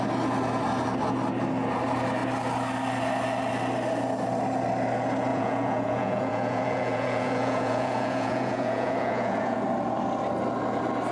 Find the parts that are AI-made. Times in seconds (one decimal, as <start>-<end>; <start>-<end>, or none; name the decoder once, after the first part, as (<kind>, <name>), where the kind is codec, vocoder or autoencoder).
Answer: 5.3-9.6 (vocoder, Vocos)

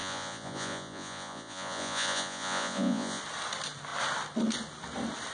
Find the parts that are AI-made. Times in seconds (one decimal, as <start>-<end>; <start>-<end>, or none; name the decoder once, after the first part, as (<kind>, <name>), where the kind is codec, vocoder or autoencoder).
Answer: 0.0-3.2 (vocoder, Vocos)

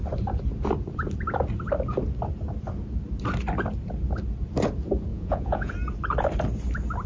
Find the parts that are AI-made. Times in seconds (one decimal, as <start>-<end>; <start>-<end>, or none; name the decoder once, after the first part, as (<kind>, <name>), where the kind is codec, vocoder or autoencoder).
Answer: 5.1-5.7 (vocoder, Vocos)

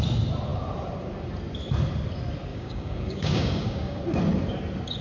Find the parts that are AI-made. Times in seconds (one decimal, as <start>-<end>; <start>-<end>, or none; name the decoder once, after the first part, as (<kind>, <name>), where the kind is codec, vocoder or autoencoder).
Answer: 2.5-4.0 (codec, DAC)

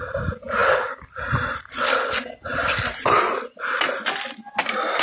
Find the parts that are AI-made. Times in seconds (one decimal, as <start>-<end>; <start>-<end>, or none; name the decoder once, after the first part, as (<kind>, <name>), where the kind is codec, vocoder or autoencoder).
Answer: none

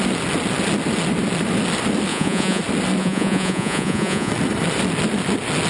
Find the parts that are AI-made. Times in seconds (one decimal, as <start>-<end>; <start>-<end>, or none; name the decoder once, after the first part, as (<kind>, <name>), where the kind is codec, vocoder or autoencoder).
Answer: 2.1-2.6 (vocoder, Vocos); 3.0-4.3

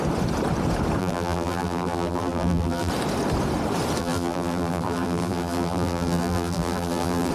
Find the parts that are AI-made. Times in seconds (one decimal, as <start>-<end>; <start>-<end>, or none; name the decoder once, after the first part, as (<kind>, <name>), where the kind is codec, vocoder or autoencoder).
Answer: 1.0-2.9 (vocoder, BigVGAN v2); 4.0-7.3

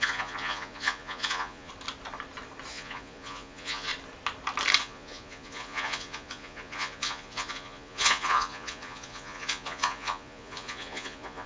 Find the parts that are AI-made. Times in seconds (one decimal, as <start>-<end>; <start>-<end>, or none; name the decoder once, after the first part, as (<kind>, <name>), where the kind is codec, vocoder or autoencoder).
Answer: 0.0-1.7 (vocoder, Vocos); 2.7-3.9; 4.8-11.5